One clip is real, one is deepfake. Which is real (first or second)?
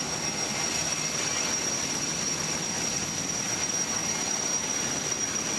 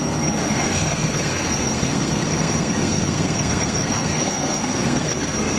first